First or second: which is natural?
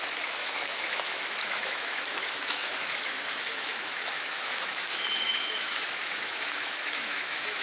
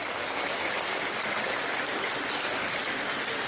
second